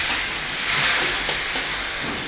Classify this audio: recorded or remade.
remade